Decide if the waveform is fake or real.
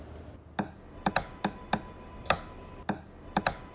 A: real